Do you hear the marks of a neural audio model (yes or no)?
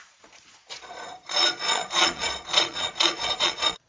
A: yes